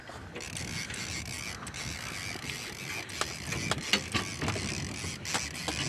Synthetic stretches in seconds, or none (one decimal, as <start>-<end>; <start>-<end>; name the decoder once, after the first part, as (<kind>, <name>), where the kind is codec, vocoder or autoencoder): none